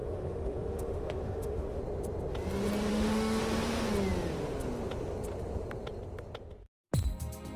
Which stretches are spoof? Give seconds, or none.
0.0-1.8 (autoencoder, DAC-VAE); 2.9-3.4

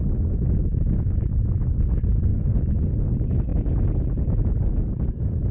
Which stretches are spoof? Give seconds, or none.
none

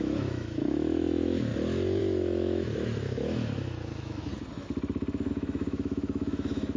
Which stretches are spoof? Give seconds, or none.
0.0-1.5 (autoencoder, DAC-VAE); 2.0-4.3; 5.3-6.8

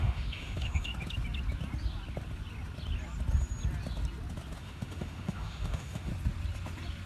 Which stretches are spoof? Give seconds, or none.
0.0-0.9 (autoencoder, DAC-VAE); 4.6-6.1

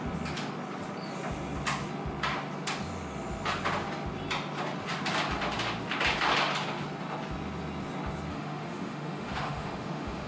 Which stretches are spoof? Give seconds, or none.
8.3-10.3 (autoencoder, DAC-VAE)

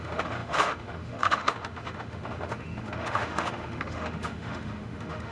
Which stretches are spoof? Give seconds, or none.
0.0-5.3 (autoencoder, DAC-VAE)

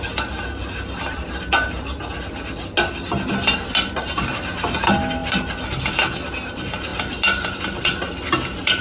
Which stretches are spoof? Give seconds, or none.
none